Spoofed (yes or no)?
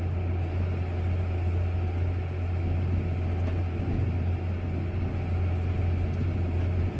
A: no